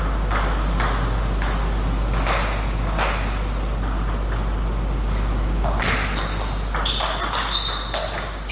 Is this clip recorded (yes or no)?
yes